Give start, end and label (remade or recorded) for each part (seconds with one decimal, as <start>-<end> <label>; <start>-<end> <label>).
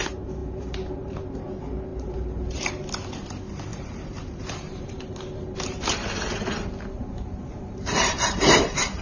0.0-0.4 recorded; 0.4-1.4 remade; 1.4-1.9 recorded; 1.9-2.7 remade; 2.7-3.7 recorded; 3.7-9.0 remade